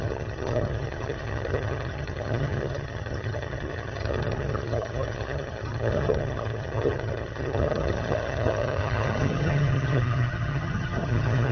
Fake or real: fake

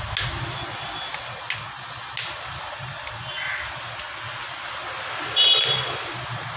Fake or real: real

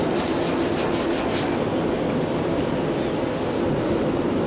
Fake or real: real